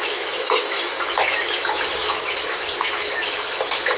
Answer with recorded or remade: remade